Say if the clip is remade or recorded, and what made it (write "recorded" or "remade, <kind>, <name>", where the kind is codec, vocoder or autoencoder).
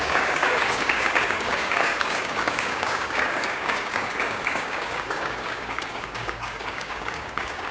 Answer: remade, codec, DAC